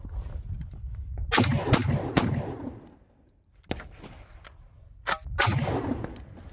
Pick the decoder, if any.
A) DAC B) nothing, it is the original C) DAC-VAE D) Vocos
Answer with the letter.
B